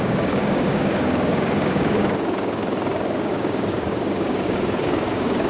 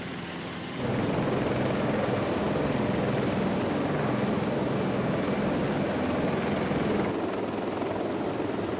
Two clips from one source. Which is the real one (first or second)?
second